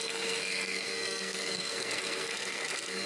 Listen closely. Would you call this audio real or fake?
fake